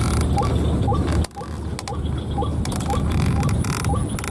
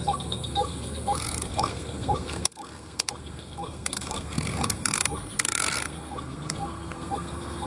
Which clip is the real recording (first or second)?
first